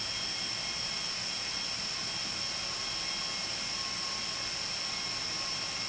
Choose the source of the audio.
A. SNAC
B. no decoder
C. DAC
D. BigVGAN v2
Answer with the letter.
B